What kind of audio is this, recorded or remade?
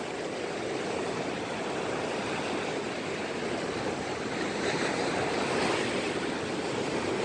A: recorded